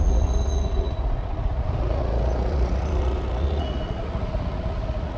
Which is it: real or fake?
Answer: fake